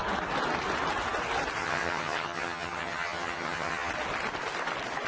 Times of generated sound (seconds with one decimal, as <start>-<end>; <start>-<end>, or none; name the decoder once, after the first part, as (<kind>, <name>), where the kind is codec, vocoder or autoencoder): 1.6-3.9 (vocoder, HiFi-GAN)